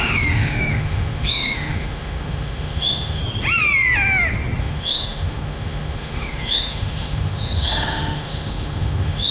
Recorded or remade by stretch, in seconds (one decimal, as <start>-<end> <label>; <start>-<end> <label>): 0.0-3.2 remade; 3.2-4.6 recorded; 4.6-9.3 remade